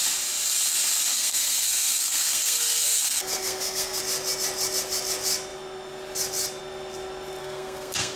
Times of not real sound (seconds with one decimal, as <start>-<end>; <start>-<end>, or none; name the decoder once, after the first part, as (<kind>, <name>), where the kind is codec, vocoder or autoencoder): 1.1-4.0 (codec, SNAC); 7.4-8.2